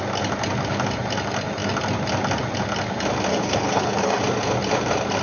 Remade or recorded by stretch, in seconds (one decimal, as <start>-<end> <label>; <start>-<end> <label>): 0.0-3.3 recorded; 3.3-4.2 remade; 4.2-5.2 recorded